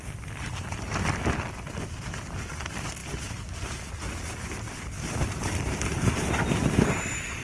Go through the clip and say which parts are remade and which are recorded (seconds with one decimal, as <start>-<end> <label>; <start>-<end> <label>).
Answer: 0.0-7.4 recorded